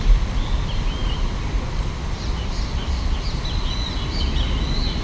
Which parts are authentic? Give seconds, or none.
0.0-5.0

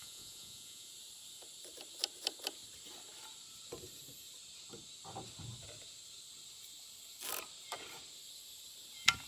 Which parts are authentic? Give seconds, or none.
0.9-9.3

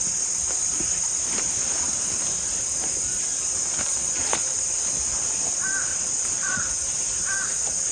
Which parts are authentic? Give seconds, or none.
0.0-3.9; 4.6-5.9; 6.7-7.9